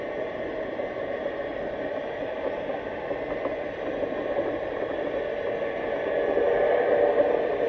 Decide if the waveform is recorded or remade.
recorded